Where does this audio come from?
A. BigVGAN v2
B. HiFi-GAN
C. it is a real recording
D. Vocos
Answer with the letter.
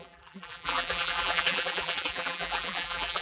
A